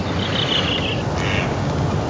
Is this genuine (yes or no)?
yes